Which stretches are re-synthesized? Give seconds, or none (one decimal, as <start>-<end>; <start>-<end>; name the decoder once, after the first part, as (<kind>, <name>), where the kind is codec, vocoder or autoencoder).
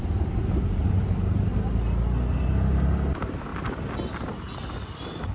0.0-1.5 (vocoder, BigVGAN v2); 3.1-3.5; 4.5-5.3